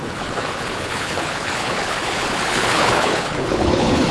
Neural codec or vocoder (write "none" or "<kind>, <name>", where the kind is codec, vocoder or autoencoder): codec, HILCodec